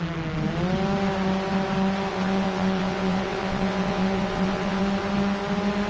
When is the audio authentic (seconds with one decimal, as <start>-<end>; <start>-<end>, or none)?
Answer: 0.0-2.1; 4.8-5.9